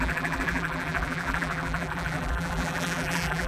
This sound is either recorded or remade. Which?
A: remade